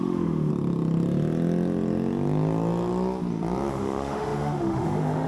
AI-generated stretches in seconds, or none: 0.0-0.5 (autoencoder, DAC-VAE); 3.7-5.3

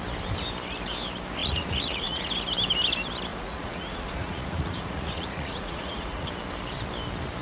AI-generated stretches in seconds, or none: 1.4-2.3 (vocoder, Vocos); 3.3-6.3